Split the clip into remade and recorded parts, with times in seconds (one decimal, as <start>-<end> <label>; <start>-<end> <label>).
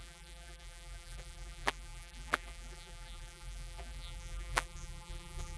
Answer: 0.0-5.6 remade